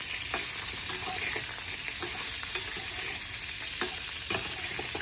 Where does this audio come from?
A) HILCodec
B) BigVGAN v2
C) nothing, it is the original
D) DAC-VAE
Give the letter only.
C